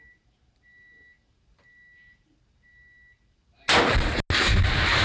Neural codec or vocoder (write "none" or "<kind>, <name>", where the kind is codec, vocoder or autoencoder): none